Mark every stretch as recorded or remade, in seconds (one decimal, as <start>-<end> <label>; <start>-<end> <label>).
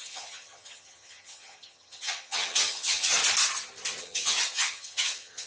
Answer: 0.0-3.2 remade; 3.2-4.0 recorded; 4.0-5.5 remade